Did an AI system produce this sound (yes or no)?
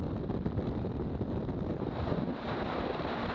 no